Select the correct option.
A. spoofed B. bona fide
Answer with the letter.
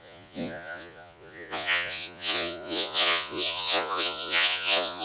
A